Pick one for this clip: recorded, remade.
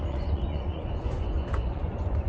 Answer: remade